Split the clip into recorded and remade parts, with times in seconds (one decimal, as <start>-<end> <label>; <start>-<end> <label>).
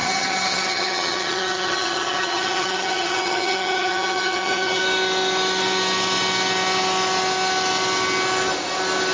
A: 0.0-4.8 remade; 4.8-9.1 recorded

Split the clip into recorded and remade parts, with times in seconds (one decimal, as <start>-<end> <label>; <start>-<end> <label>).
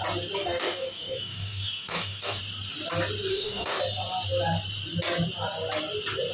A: 0.0-0.4 recorded; 0.4-2.4 remade; 2.4-3.3 recorded; 3.3-3.8 remade; 3.8-6.3 recorded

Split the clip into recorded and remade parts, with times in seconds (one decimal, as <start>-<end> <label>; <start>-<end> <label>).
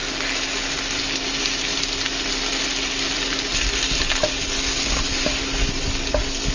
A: 0.0-6.5 recorded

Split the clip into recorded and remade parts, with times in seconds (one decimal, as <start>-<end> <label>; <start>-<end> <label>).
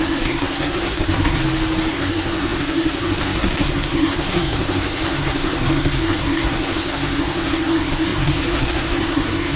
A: 0.0-1.4 remade; 1.4-1.9 recorded; 1.9-9.6 remade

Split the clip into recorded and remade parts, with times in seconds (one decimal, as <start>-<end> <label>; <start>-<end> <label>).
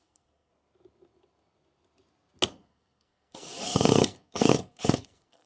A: 0.0-0.5 remade; 0.5-2.5 recorded; 2.5-5.5 remade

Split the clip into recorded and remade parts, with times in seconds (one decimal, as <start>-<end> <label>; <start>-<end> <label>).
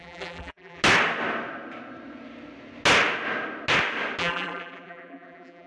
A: 0.0-0.8 remade; 0.8-4.2 recorded; 4.2-5.7 remade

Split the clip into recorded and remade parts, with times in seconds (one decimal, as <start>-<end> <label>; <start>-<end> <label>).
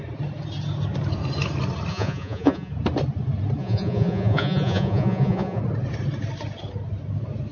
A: 0.0-1.9 recorded; 1.9-2.7 remade; 2.7-3.6 recorded; 3.6-5.6 remade; 5.6-7.5 recorded